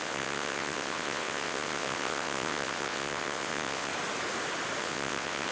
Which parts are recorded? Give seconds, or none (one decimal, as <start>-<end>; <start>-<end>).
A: 3.9-4.8